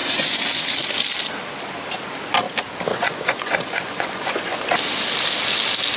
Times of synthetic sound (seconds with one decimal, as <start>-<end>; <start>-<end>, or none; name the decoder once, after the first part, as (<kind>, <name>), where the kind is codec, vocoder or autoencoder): 0.0-0.6 (vocoder, Vocos); 2.9-4.6